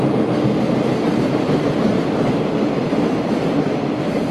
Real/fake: real